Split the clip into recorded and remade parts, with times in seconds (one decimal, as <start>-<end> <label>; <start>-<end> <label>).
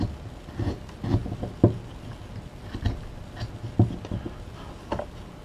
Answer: 0.0-5.4 recorded